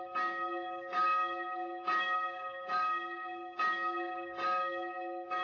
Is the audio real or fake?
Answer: fake